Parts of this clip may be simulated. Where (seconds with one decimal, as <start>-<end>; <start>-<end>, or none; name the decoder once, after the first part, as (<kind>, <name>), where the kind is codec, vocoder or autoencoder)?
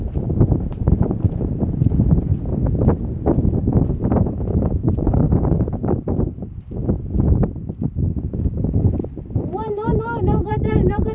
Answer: 0.0-2.3 (vocoder, BigVGAN v2); 3.4-6.8; 8.8-11.1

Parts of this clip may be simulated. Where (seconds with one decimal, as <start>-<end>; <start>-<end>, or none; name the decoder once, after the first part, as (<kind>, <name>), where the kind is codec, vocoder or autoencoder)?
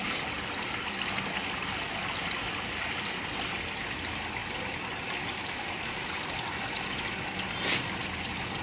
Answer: 2.5-3.8 (vocoder, BigVGAN v2); 4.4-8.6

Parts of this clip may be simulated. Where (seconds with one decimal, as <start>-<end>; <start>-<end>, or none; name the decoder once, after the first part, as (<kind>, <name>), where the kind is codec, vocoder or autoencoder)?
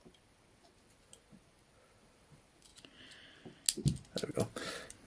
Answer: 0.0-2.7 (vocoder, BigVGAN v2); 4.3-5.1